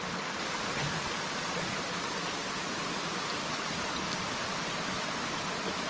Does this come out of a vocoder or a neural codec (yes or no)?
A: no